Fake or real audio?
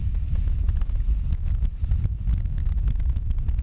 real